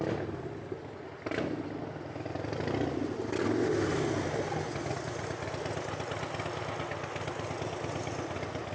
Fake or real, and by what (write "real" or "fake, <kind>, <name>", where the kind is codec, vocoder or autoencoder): real